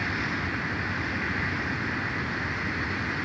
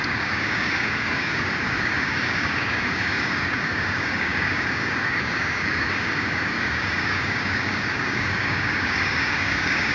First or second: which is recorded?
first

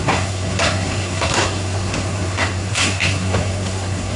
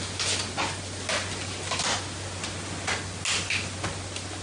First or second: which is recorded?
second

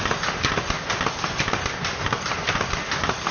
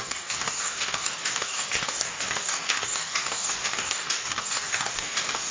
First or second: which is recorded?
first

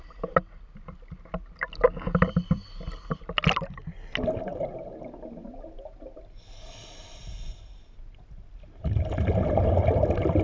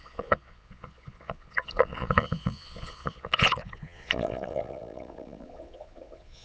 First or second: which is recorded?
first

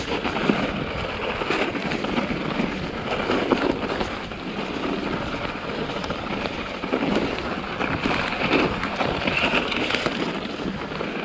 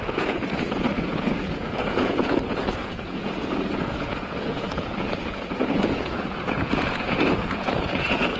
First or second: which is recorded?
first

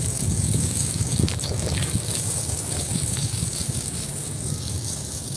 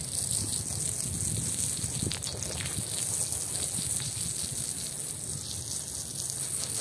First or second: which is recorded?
second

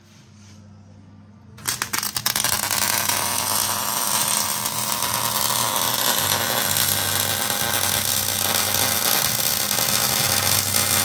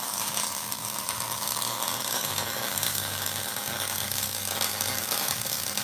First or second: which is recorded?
first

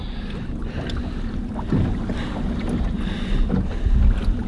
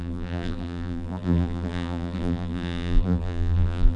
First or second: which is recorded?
first